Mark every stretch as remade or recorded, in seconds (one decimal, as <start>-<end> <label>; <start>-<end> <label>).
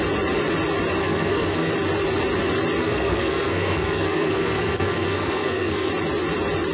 0.0-1.0 recorded; 1.0-1.7 remade; 1.7-2.8 recorded; 2.8-5.9 remade; 5.9-6.7 recorded